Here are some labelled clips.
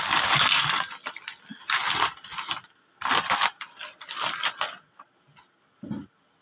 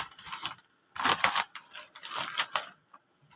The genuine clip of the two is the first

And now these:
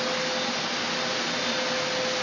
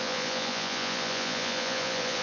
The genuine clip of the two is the first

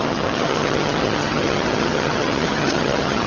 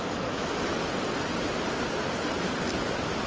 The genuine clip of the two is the second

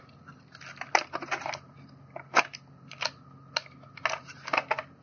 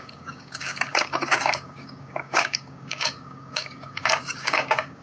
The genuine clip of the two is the first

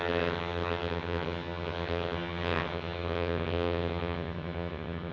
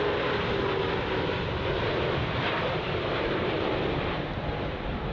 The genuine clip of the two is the second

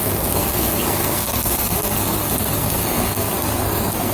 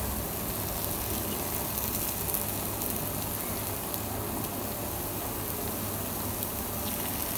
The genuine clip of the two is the second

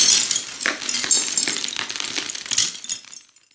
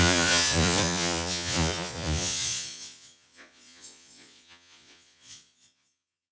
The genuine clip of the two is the first